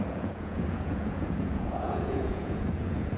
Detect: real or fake fake